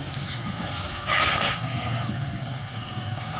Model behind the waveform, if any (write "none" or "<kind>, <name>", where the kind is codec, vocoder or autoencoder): codec, SNAC